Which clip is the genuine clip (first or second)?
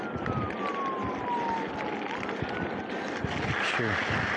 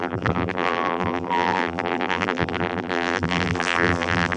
first